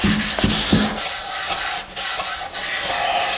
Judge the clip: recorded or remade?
recorded